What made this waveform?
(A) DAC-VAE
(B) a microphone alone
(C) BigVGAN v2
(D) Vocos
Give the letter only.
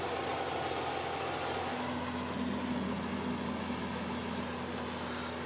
B